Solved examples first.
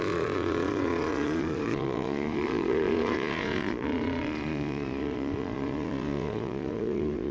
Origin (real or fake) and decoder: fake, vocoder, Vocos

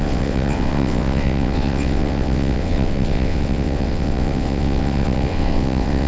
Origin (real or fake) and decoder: fake, vocoder, WaveNeXt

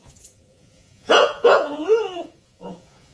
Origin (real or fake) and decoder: fake, vocoder, Vocos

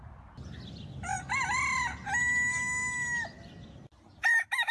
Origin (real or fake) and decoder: real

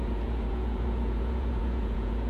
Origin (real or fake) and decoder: fake, vocoder, Vocos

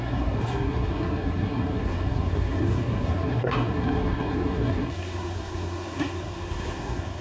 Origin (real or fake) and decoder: fake, codec, SNAC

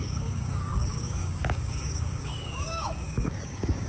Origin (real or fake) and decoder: fake, codec, DAC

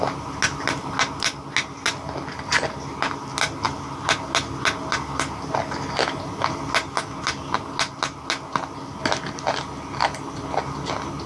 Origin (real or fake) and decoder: real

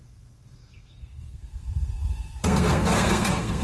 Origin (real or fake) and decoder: fake, codec, SNAC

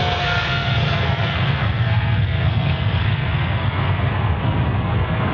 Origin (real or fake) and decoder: fake, codec, SNAC